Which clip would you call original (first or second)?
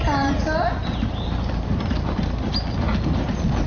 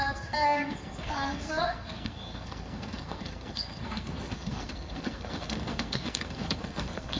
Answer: first